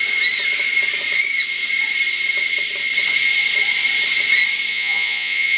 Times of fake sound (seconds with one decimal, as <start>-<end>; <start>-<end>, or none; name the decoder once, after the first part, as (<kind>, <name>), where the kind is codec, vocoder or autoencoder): 4.7-5.6 (vocoder, Vocos)